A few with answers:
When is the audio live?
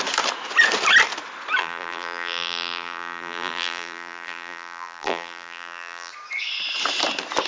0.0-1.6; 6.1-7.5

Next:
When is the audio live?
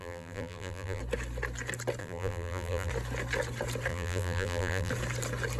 1.0-2.0; 2.9-3.9; 4.9-5.6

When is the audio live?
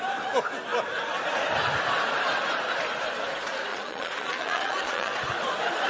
0.0-3.7; 5.1-5.9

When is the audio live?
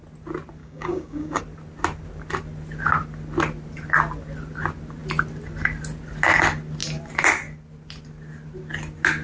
0.0-0.6; 1.4-9.2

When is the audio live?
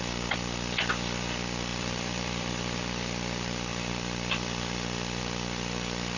0.0-1.7; 2.5-3.7; 5.2-6.2